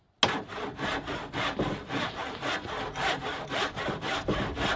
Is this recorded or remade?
recorded